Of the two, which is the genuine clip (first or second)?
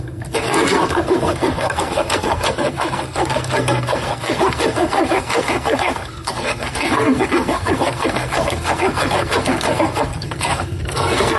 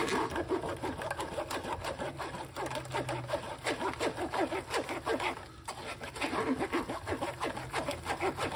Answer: second